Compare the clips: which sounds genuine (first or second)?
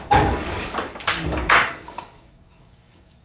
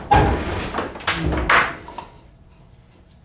second